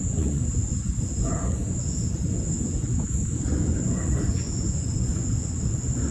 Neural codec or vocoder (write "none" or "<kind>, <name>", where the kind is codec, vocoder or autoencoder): vocoder, Vocos